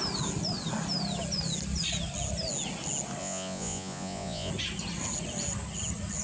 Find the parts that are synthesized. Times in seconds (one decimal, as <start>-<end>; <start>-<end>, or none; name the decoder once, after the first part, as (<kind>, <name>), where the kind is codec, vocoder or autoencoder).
3.2-4.5 (vocoder, Vocos)